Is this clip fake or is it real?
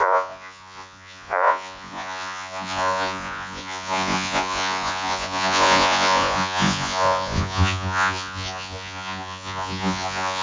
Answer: fake